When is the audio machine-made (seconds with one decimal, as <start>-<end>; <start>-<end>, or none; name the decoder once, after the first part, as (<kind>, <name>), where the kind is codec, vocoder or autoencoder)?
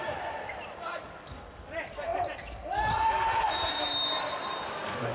0.0-5.1 (vocoder, BigVGAN v2)